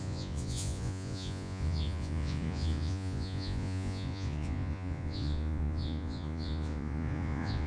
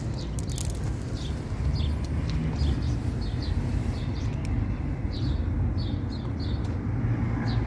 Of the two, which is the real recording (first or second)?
second